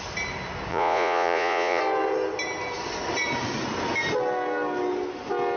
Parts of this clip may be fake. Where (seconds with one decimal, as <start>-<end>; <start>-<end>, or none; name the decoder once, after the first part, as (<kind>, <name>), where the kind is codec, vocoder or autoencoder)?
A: 0.7-1.8 (vocoder, Vocos)